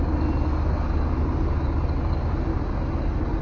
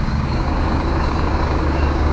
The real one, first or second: first